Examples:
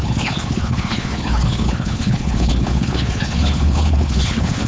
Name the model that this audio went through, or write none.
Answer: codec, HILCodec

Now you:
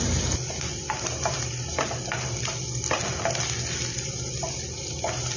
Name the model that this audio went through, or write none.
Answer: none